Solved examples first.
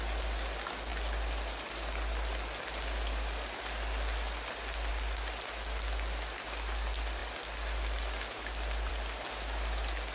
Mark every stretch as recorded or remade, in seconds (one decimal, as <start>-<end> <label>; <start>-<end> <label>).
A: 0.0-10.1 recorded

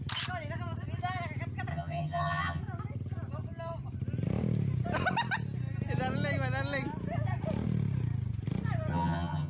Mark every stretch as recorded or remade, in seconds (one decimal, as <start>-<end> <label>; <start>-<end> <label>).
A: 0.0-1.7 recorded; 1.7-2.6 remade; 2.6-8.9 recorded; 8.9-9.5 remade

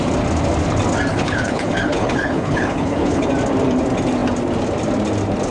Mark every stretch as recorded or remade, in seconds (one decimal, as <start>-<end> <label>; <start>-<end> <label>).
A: 0.0-1.1 recorded; 1.1-3.3 remade; 3.3-5.5 recorded

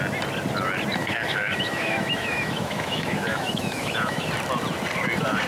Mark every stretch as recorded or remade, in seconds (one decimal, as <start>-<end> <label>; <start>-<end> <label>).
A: 0.0-1.0 recorded; 1.0-4.3 remade; 4.3-5.5 recorded